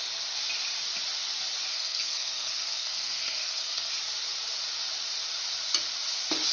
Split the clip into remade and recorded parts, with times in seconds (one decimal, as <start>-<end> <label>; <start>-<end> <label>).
0.0-1.7 recorded; 1.7-3.9 remade; 3.9-6.5 recorded